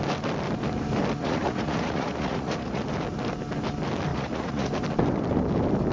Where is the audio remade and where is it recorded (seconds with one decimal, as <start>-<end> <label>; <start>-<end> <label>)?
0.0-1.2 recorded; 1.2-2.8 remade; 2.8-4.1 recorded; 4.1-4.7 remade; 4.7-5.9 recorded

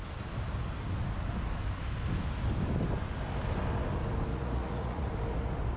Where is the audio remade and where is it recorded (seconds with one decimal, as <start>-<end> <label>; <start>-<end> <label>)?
0.0-4.3 recorded; 4.3-5.1 remade; 5.1-5.8 recorded

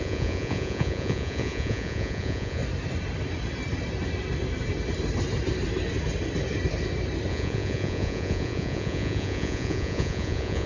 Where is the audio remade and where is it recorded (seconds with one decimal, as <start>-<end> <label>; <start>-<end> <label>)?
0.0-2.6 remade; 2.6-7.3 recorded; 7.3-10.7 remade

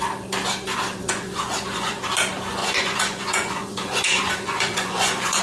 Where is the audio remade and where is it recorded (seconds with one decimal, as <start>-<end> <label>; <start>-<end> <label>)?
0.0-1.0 recorded; 1.0-2.0 remade; 2.0-2.6 recorded; 2.6-5.4 remade

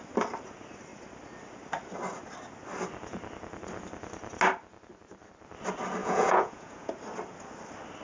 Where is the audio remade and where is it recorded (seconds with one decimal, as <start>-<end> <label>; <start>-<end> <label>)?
0.0-6.0 recorded; 6.0-6.9 remade; 6.9-8.0 recorded

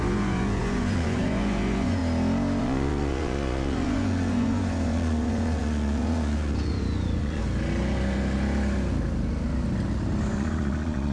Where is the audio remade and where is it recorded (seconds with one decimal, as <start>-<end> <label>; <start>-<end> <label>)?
0.0-2.0 remade; 2.0-2.6 recorded; 2.6-7.4 remade; 7.4-10.3 recorded; 10.3-11.1 remade

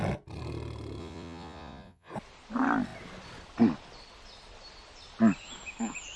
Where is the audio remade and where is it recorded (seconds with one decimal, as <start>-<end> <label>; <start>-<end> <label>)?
0.0-1.0 recorded; 1.0-2.1 remade; 2.1-6.2 recorded

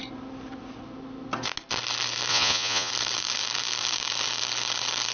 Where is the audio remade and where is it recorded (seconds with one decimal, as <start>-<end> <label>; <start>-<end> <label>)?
0.0-2.3 recorded; 2.3-2.9 remade; 2.9-5.1 recorded